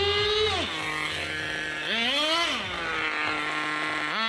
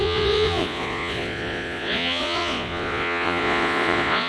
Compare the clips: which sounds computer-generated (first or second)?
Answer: second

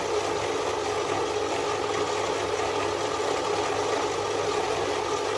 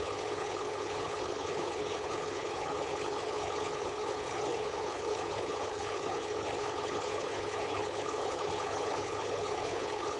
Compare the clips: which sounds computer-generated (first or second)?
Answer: second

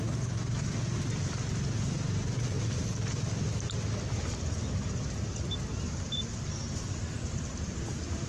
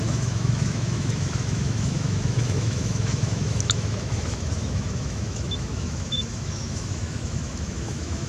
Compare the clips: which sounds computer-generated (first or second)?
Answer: second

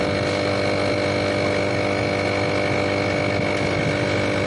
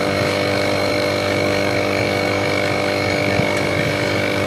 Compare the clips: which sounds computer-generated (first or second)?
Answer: second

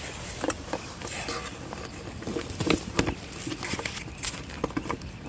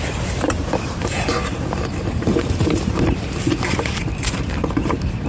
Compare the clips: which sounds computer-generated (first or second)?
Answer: second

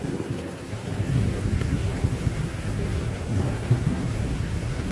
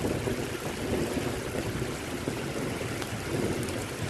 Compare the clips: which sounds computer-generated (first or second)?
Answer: first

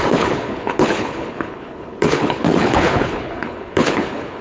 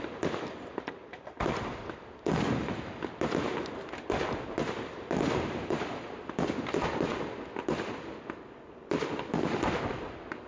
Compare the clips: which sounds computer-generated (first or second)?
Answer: first